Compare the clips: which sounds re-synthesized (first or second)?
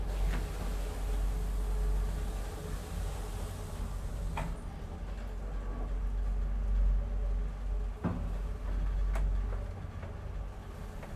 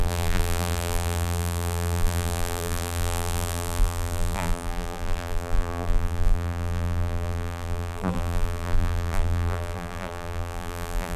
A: second